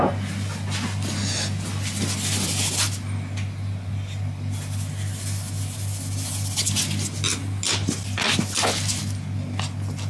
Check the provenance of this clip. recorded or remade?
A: recorded